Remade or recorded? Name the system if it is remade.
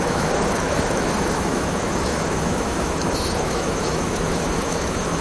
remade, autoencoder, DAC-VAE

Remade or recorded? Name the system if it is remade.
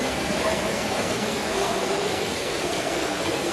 remade, codec, SNAC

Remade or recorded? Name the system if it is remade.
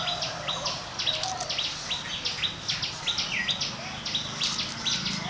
recorded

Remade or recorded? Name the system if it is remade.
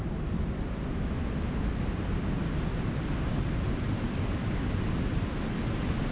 recorded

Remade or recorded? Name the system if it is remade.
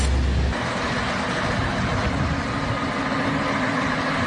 recorded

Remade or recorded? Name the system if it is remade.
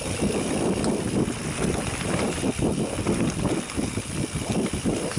recorded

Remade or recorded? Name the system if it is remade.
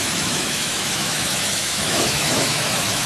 remade, autoencoder, DAC-VAE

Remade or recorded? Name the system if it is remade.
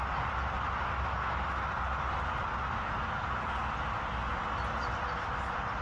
recorded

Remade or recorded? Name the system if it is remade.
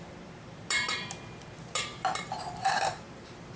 remade, vocoder, BigVGAN v2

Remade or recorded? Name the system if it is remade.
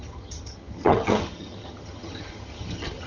remade, vocoder, HiFi-GAN